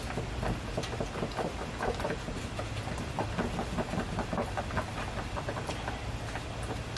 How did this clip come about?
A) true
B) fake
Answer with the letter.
A